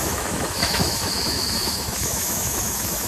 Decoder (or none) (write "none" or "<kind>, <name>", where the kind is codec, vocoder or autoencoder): autoencoder, DAC-VAE